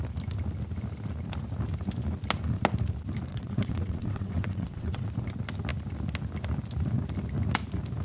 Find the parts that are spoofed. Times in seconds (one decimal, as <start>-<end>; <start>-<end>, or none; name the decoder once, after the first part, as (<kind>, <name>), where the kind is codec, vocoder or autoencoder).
3.3-5.1 (vocoder, WaveNeXt)

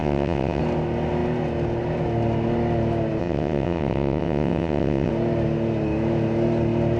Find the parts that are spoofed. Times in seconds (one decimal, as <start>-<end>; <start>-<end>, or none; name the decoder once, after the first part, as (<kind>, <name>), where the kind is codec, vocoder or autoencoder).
0.0-0.6 (vocoder, WaveNeXt); 3.2-5.1